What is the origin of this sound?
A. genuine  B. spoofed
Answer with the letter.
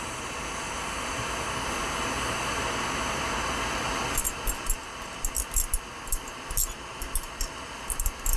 A